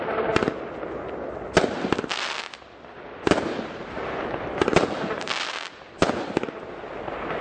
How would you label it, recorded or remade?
recorded